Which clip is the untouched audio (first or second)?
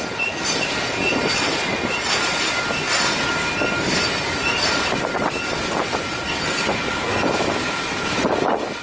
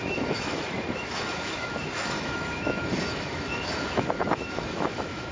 first